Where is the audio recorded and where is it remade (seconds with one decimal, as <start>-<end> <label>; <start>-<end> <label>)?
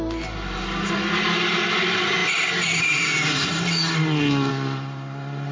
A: 0.0-5.5 recorded